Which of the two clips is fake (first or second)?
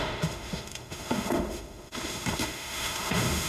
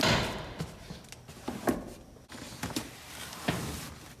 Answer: first